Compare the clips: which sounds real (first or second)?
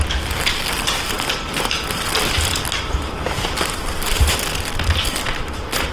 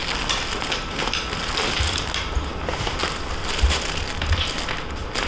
second